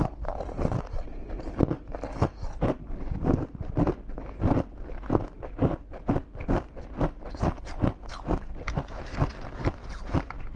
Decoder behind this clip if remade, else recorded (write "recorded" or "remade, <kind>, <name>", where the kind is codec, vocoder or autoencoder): recorded